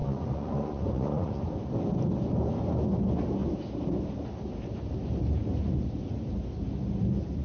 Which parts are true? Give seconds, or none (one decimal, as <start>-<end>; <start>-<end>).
1.4-7.4